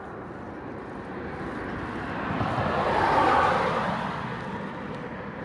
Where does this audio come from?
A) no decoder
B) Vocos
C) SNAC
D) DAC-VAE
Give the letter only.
A